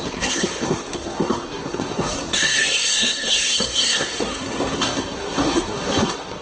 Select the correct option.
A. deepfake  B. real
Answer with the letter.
A